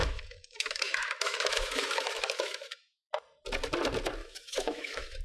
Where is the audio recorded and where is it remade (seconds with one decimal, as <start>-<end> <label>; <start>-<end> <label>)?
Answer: 0.0-3.1 remade; 3.1-4.2 recorded; 4.2-5.2 remade